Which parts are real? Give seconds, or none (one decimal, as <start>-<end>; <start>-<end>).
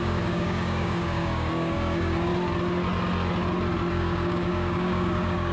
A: 2.3-3.9